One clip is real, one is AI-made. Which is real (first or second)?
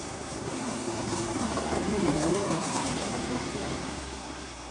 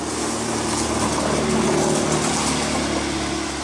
second